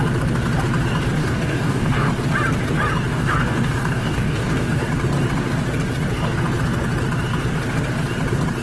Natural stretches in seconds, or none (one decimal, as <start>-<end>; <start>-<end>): 0.0-1.2; 2.1-3.1; 4.8-8.6